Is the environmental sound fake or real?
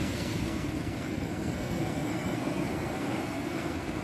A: fake